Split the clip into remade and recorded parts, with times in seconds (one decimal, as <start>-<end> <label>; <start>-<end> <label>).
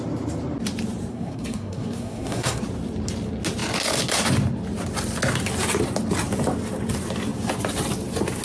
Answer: 0.0-1.1 recorded; 1.1-2.6 remade; 2.6-8.4 recorded